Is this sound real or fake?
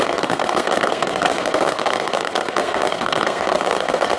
fake